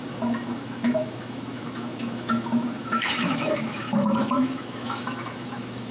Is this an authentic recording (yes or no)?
no